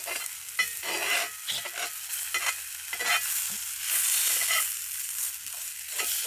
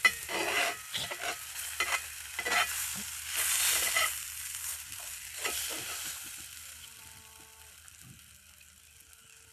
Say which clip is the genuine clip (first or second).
first